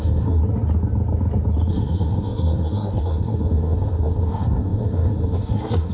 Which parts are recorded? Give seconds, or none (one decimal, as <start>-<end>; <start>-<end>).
0.4-1.7